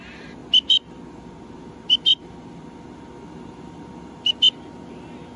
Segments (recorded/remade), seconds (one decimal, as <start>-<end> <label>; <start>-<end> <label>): 0.0-5.4 recorded